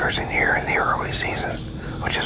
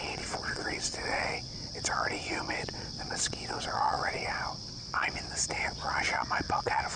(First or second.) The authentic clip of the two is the first